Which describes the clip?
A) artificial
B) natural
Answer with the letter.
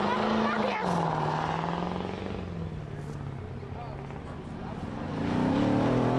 B